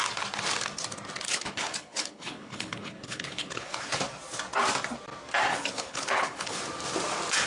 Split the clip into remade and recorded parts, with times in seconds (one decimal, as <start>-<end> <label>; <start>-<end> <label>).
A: 0.0-1.3 recorded; 1.3-4.0 remade; 4.0-5.5 recorded; 5.5-6.6 remade; 6.6-7.5 recorded